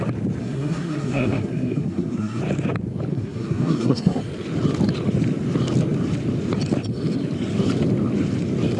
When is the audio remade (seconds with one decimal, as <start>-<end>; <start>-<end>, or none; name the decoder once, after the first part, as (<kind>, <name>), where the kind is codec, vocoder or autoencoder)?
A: 0.4-2.4 (codec, SNAC); 3.1-4.2